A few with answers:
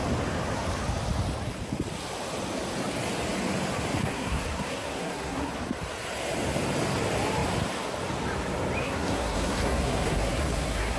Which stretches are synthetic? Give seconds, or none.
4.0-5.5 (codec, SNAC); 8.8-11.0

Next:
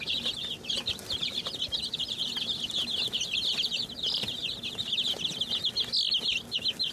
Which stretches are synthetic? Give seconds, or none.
0.4-4.5 (vocoder, BigVGAN v2)